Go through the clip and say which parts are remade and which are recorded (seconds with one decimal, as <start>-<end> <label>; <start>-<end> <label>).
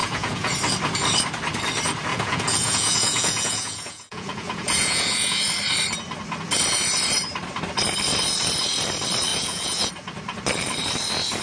0.0-0.5 remade; 0.5-2.1 recorded; 2.1-5.4 remade; 5.4-9.3 recorded; 9.3-9.9 remade; 9.9-11.4 recorded